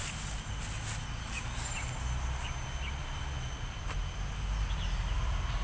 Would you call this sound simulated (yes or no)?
no